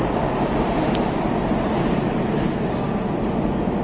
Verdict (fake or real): real